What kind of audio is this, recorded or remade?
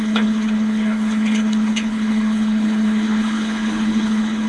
remade